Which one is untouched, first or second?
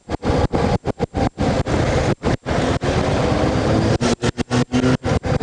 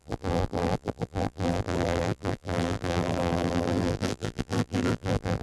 first